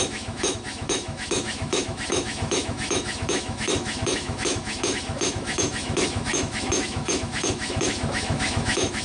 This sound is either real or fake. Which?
fake